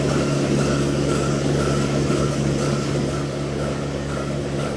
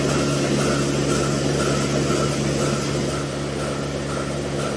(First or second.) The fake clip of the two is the first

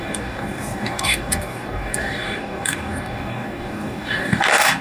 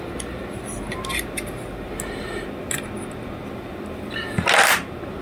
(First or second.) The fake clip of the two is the first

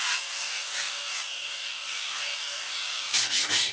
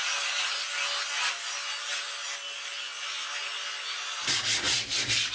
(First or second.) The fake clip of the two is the first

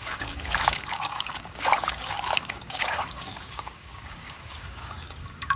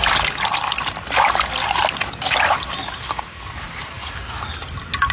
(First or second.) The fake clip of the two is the first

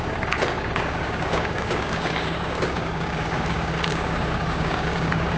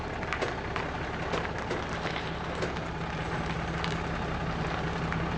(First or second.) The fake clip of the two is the first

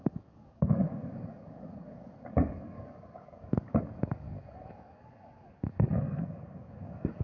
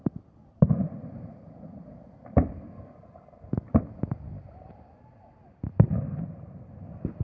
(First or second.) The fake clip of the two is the first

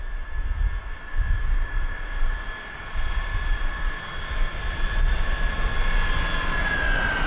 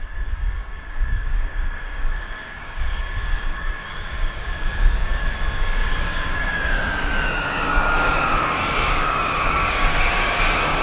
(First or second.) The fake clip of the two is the second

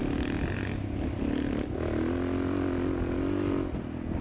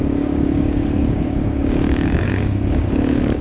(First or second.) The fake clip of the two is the second